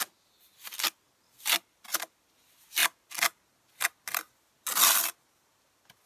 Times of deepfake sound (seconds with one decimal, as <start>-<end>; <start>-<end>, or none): none